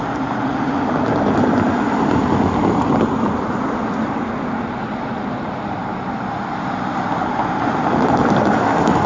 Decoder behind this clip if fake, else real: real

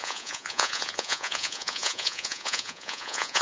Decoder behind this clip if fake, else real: fake, vocoder, Vocos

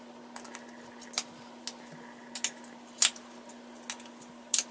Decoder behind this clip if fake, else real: real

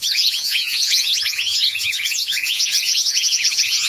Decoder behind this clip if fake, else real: fake, vocoder, Vocos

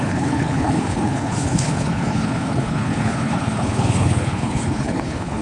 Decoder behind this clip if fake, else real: fake, codec, HILCodec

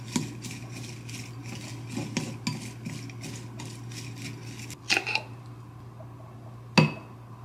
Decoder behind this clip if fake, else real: real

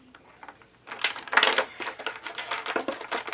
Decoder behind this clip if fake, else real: real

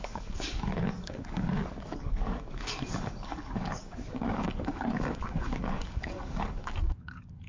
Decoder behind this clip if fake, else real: fake, codec, DAC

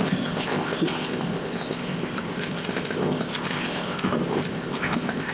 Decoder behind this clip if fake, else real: fake, codec, ZipCodec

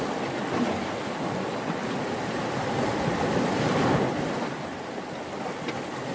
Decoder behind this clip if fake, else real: real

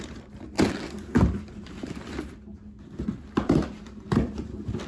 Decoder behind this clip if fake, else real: real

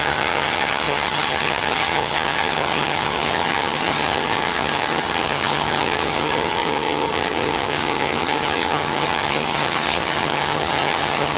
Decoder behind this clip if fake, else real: fake, vocoder, HiFi-GAN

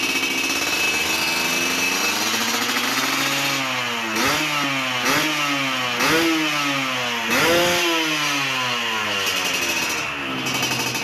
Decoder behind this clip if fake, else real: real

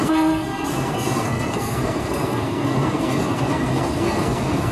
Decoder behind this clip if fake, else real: fake, codec, SNAC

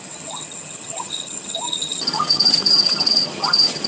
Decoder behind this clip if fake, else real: fake, vocoder, HiFi-GAN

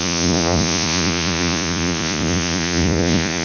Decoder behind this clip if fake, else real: fake, vocoder, Vocos